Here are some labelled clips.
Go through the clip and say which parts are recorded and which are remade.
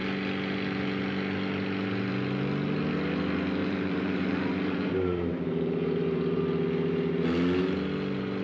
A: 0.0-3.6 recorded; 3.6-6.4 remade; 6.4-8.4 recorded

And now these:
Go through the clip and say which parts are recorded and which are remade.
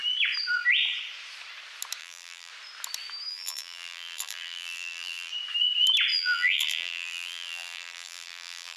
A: 0.0-2.0 recorded; 2.0-2.5 remade; 2.5-3.3 recorded; 3.3-5.3 remade; 5.3-6.1 recorded; 6.1-8.8 remade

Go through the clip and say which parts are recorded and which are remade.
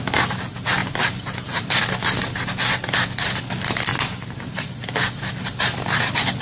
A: 0.0-0.8 recorded; 0.8-1.8 remade; 1.8-3.9 recorded; 3.9-4.7 remade; 4.7-6.4 recorded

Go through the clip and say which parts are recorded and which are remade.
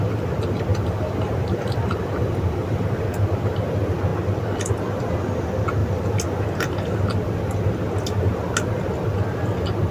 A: 0.0-0.7 recorded; 0.7-3.0 remade; 3.0-5.8 recorded; 5.8-6.4 remade; 6.4-9.9 recorded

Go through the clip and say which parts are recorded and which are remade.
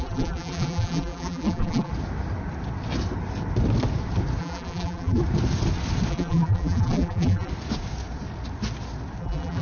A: 0.0-1.9 remade; 1.9-4.4 recorded; 4.4-5.2 remade; 5.2-6.1 recorded; 6.1-7.5 remade; 7.5-9.2 recorded; 9.2-9.6 remade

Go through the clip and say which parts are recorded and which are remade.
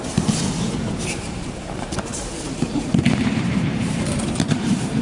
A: 0.0-5.0 remade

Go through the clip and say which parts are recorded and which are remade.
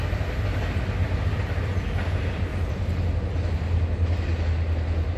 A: 0.0-2.5 recorded; 2.5-3.1 remade; 3.1-5.2 recorded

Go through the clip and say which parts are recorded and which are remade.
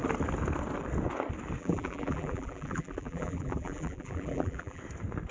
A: 0.0-1.6 recorded; 1.6-4.8 remade; 4.8-5.3 recorded